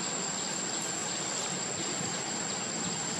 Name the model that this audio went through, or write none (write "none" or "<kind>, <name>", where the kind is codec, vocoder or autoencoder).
none